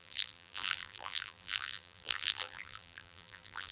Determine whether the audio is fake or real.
fake